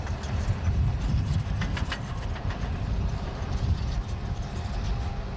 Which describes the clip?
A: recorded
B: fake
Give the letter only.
A